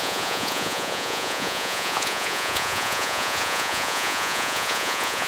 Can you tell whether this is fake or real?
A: fake